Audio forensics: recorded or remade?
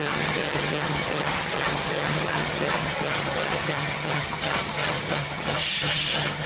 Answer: remade